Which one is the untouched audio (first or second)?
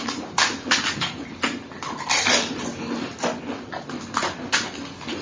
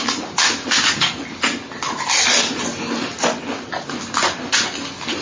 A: second